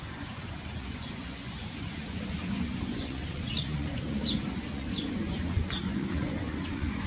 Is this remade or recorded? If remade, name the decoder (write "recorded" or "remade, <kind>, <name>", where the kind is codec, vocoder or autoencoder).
remade, vocoder, Vocos